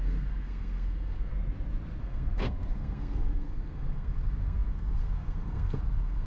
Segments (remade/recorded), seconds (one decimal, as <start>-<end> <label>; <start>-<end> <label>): 0.0-1.3 remade; 1.3-2.0 recorded; 2.0-6.3 remade